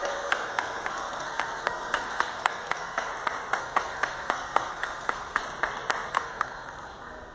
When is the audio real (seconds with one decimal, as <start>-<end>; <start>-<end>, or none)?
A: 3.1-3.6; 5.4-6.1